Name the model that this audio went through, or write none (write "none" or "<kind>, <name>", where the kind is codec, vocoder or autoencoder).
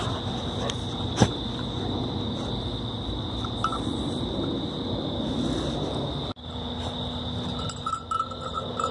none